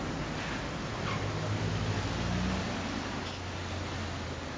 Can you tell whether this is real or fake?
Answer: real